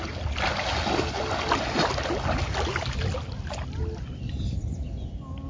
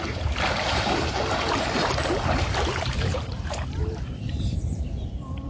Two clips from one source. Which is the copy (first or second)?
second